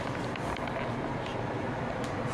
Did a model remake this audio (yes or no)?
no